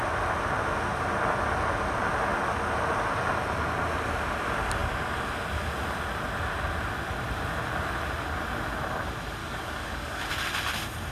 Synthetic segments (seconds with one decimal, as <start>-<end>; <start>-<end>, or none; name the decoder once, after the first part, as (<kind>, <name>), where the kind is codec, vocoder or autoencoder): 9.4-10.3 (codec, DAC)